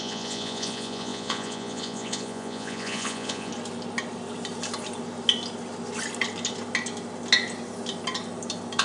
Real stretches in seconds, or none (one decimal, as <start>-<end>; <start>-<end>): 3.5-8.8

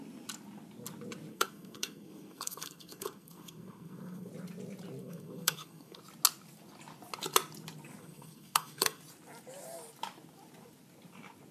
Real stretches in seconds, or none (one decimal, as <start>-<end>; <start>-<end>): 0.0-1.3; 4.3-5.0; 6.0-8.0; 9.0-11.5

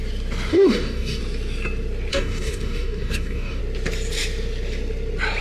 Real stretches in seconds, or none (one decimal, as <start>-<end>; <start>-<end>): 0.0-0.5; 1.2-2.1; 3.6-5.4

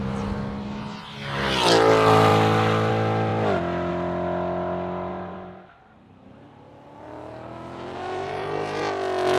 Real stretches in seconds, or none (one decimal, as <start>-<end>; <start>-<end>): 0.0-5.1; 8.8-9.4

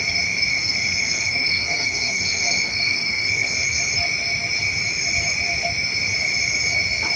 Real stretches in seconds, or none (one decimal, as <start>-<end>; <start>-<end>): 0.0-0.5; 3.8-7.2

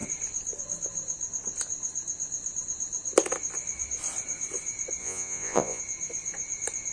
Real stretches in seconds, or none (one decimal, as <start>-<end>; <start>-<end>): 0.0-5.0; 5.8-6.9

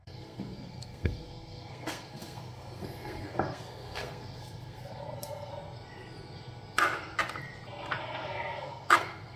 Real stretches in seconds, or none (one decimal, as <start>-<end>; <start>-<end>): 5.5-8.0